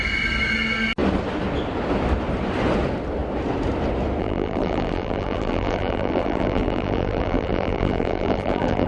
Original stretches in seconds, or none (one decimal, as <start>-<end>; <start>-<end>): 0.0-4.2